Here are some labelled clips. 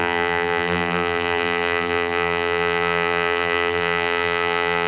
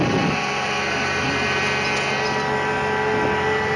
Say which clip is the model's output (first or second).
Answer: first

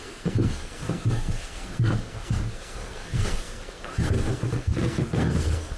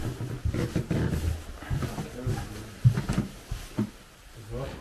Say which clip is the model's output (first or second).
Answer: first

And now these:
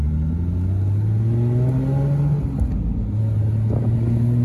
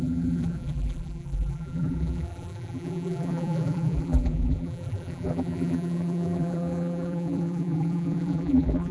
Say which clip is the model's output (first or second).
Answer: second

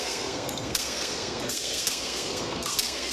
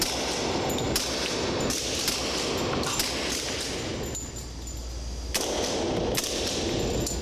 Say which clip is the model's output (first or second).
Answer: first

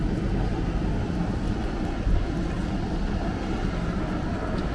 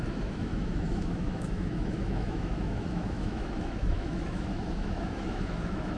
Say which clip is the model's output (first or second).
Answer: second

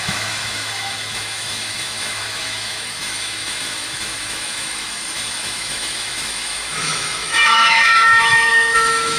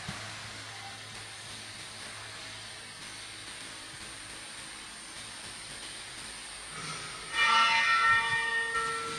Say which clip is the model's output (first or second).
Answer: first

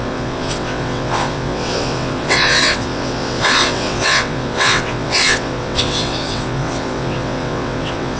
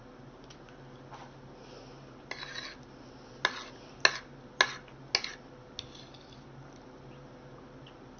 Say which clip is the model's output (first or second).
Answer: first